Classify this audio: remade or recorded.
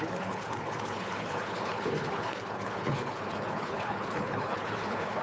remade